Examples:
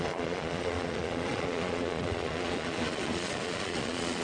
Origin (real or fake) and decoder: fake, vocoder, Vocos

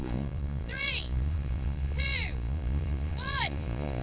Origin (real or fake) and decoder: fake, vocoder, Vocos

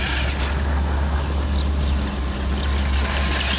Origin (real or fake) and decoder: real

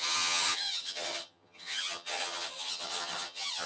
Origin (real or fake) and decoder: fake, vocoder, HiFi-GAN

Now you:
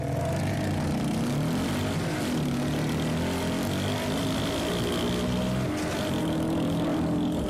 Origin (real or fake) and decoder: real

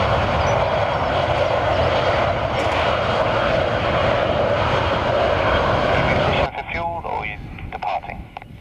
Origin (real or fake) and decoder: real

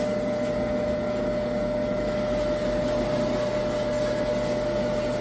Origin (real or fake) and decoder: real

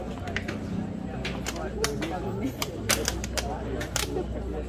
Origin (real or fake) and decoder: real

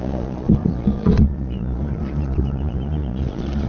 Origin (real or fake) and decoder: fake, vocoder, Vocos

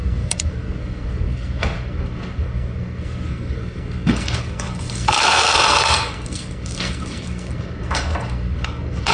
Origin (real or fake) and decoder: fake, codec, SNAC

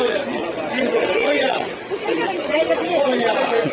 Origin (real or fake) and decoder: fake, vocoder, WaveNeXt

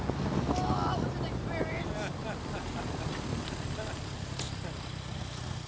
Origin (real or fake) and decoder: real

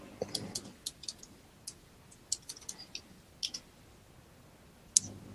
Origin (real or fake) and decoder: real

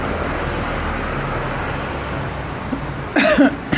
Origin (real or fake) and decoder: real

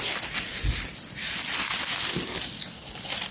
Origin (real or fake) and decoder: real